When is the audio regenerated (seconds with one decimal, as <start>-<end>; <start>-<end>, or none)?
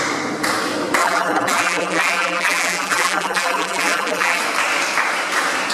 1.0-4.4